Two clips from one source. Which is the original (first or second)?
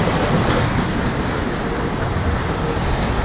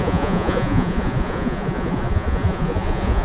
first